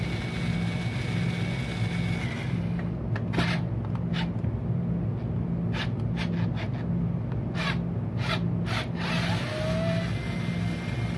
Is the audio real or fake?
real